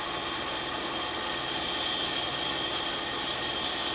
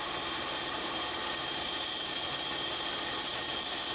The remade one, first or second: second